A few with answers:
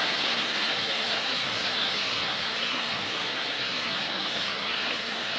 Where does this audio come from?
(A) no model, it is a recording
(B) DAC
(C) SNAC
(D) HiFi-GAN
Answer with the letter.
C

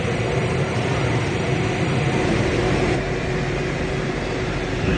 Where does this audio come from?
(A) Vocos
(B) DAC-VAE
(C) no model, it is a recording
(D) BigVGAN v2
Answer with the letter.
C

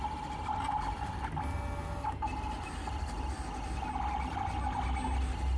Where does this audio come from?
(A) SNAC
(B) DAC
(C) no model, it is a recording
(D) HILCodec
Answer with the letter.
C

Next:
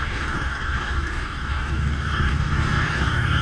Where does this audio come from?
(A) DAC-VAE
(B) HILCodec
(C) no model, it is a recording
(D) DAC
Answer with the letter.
D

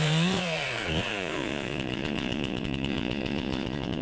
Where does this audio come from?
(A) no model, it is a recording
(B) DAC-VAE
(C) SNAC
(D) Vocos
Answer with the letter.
D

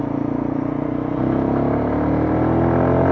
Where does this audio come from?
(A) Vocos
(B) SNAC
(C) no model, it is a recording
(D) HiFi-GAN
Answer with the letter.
C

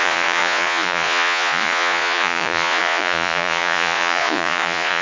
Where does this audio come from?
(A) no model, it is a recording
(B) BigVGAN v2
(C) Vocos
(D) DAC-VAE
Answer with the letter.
C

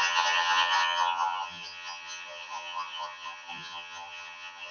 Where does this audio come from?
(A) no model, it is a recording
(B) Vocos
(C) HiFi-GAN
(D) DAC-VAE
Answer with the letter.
C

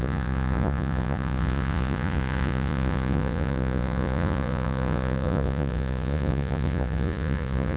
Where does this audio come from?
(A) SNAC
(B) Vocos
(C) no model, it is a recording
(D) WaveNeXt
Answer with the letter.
B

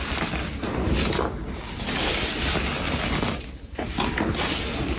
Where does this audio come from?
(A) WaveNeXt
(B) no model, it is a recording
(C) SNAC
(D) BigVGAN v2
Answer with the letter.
B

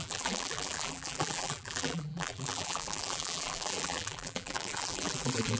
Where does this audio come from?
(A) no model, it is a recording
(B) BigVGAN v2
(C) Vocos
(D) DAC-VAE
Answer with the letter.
B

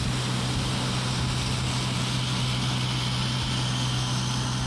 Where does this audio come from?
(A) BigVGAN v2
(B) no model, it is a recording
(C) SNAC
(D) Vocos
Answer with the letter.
B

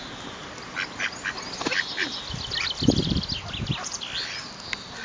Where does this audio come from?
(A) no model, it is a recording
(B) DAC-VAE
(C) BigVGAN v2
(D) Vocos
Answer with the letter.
A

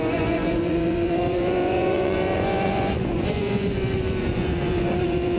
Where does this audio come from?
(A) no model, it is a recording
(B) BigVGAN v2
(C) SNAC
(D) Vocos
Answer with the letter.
D